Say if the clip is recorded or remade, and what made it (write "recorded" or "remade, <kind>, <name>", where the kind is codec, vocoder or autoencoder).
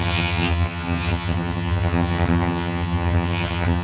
remade, vocoder, HiFi-GAN